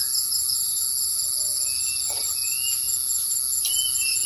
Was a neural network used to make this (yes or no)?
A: no